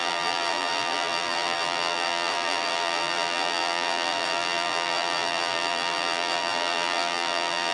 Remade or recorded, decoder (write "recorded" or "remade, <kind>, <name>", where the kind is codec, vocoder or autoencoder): remade, vocoder, BigVGAN v2